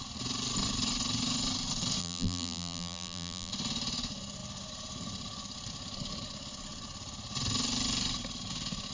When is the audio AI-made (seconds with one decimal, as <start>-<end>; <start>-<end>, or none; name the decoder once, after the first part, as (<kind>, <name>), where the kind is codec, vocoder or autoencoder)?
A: 2.0-3.5 (vocoder, BigVGAN v2)

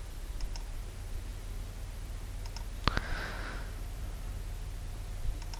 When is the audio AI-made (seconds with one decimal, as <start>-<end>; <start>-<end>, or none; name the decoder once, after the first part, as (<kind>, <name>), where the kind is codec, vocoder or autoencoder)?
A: 0.0-1.3 (vocoder, BigVGAN v2); 3.0-4.3; 4.9-5.6

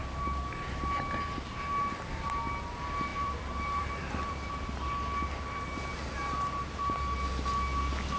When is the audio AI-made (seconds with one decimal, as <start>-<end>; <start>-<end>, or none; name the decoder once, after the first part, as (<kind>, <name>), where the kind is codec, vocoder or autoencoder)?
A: 3.1-4.9 (vocoder, BigVGAN v2)